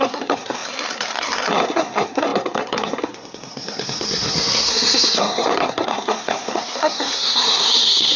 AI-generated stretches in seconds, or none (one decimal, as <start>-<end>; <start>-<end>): 0.0-8.2